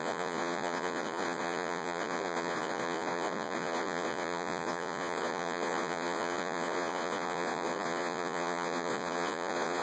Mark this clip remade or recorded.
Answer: remade